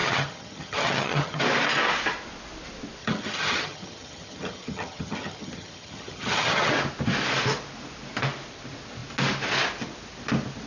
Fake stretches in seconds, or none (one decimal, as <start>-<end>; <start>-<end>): 0.0-1.4; 3.0-6.7